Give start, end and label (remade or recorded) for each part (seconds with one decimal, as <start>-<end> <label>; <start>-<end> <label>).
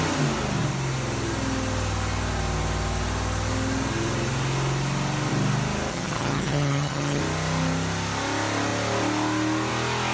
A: 0.0-5.9 recorded; 5.9-7.2 remade; 7.2-10.1 recorded